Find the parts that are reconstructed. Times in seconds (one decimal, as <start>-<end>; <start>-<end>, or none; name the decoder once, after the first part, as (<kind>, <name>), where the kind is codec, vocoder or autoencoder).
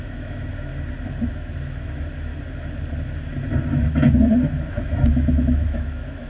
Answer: 0.0-0.7 (autoencoder, DAC-VAE); 1.3-2.3; 4.7-6.3